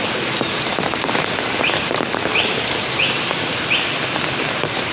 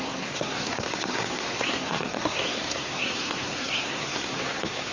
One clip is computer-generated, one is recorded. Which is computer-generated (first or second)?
second